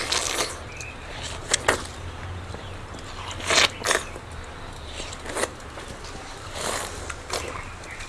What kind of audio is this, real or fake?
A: real